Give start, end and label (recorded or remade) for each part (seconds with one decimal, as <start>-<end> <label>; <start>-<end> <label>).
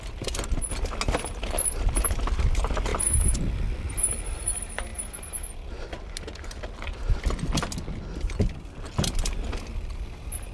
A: 0.0-10.5 recorded